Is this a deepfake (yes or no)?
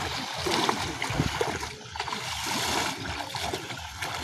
no